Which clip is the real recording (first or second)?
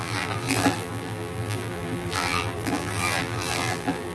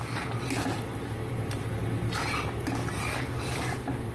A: second